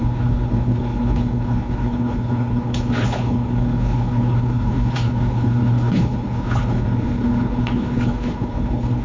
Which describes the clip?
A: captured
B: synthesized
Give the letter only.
B